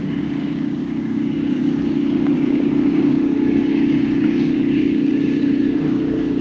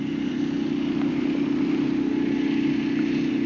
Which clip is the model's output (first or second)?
first